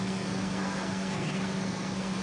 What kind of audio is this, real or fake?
fake